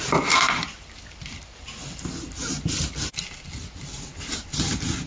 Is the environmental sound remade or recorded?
recorded